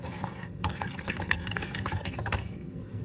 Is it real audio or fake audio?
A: fake